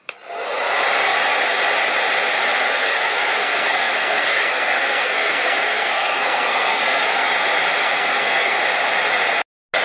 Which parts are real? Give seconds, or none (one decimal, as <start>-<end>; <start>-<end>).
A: 0.0-2.6; 7.3-7.8; 8.6-9.8